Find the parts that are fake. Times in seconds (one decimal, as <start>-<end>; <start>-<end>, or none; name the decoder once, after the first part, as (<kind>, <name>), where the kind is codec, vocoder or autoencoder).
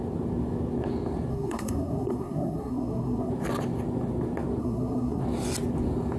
1.3-3.3 (codec, SNAC); 4.6-5.2